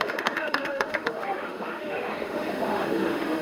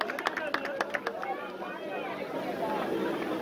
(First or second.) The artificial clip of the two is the first